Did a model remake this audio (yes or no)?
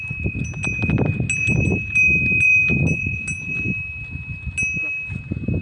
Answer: no